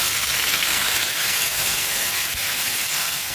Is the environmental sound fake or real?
fake